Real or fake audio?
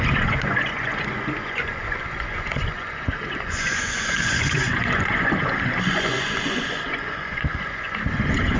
fake